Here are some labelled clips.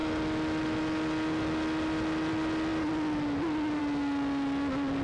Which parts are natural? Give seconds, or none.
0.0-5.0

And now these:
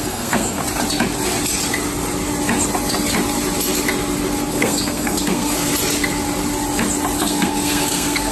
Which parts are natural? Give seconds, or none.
0.6-4.5; 5.7-7.2

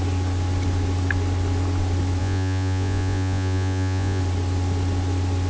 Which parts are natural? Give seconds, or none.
0.0-2.2; 4.2-5.5